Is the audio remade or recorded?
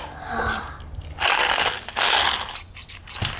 recorded